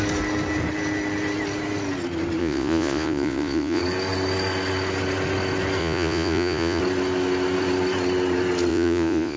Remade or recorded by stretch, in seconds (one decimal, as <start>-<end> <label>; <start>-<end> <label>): 0.0-2.4 recorded; 2.4-3.8 remade; 3.8-5.8 recorded; 5.8-6.8 remade; 6.8-8.7 recorded; 8.7-9.4 remade